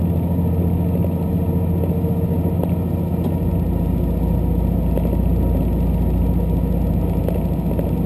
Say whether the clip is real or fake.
real